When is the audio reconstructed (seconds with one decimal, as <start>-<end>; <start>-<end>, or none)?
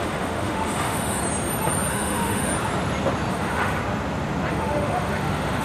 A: 0.0-1.2; 1.9-2.5; 3.3-3.8; 4.5-5.6